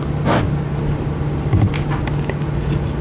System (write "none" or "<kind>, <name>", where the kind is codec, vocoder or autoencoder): none